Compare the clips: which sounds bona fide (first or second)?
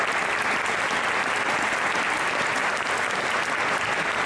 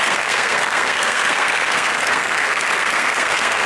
first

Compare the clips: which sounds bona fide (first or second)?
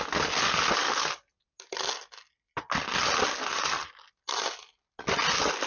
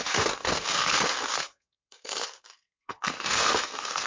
first